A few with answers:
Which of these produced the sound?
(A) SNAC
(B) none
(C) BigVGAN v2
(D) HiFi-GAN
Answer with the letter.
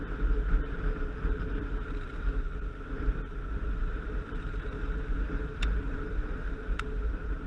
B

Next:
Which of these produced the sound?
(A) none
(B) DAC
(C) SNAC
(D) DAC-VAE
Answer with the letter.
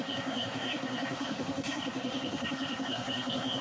C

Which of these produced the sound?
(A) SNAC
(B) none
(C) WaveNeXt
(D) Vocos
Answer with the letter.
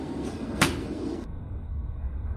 A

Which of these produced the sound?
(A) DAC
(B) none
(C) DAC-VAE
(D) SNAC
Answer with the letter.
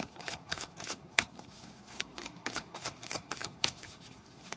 D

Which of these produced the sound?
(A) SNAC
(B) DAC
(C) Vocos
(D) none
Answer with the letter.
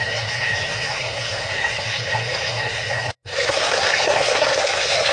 A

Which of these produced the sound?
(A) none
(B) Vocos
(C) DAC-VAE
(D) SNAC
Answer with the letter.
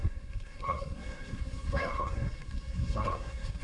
D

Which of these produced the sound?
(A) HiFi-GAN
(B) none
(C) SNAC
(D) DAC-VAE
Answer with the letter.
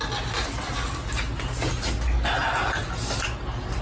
B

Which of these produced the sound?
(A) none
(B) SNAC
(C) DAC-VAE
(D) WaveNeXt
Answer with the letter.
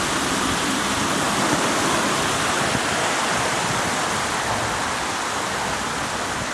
A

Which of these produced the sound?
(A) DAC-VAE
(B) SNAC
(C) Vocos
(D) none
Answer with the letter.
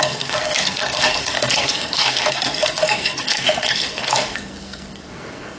B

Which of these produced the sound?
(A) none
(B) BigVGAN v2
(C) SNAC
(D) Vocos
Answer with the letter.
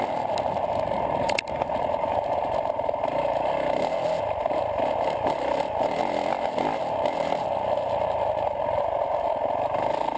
A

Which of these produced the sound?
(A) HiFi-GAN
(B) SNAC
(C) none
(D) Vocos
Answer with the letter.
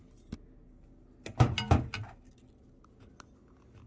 C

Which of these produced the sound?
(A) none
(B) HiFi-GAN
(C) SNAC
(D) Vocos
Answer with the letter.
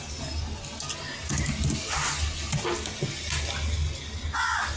A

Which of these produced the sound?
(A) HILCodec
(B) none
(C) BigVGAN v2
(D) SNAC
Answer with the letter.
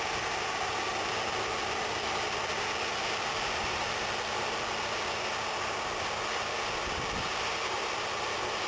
B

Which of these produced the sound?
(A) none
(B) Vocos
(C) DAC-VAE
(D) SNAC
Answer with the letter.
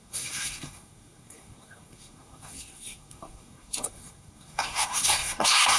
D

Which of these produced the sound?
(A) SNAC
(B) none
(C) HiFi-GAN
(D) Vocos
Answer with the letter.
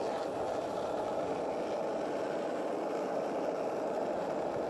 B